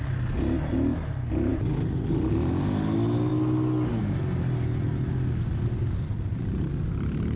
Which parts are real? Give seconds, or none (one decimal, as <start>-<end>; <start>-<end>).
0.0-5.8; 6.7-7.4